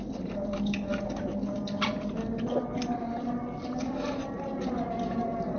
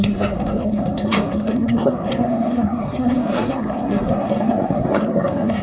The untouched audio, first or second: first